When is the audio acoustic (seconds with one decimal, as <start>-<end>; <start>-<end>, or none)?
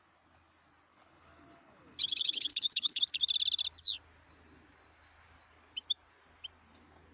0.0-0.9; 3.0-7.1